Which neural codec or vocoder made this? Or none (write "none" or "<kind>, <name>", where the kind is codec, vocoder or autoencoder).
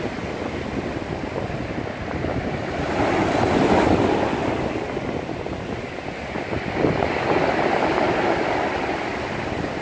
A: none